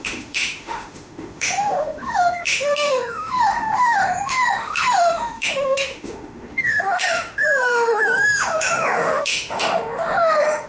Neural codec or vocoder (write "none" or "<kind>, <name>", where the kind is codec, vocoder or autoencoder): autoencoder, DAC-VAE